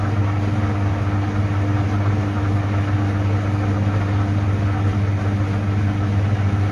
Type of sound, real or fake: real